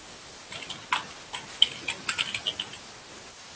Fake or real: real